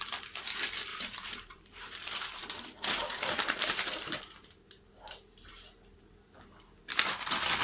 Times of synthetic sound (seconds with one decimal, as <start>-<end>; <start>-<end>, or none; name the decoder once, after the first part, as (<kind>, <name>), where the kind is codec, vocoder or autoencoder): 0.9-5.5 (vocoder, BigVGAN v2)